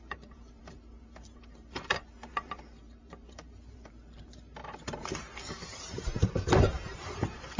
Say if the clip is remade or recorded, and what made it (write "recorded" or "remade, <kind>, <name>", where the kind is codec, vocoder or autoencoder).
remade, vocoder, BigVGAN v2